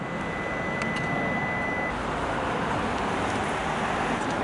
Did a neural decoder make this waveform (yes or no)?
no